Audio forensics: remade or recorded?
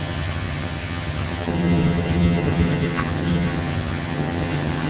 remade